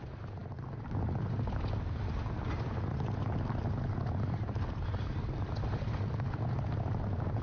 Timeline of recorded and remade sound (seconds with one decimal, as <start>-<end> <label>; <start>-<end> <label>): 0.0-7.4 recorded